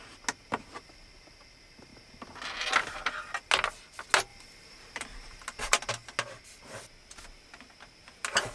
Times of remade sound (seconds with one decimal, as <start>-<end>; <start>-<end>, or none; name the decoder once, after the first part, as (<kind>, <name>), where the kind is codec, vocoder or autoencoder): 4.3-5.9 (vocoder, BigVGAN v2)